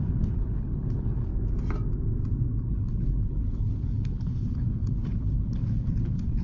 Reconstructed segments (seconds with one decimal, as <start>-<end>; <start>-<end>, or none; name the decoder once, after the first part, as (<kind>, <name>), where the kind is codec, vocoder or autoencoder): 0.0-1.3 (codec, HILCodec); 2.7-6.4